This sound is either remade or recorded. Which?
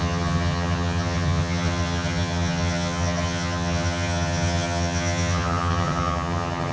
remade